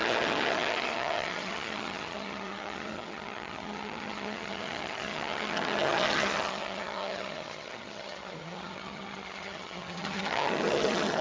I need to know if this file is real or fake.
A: fake